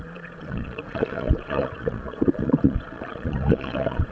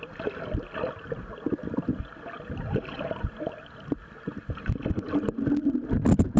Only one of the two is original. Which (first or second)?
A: second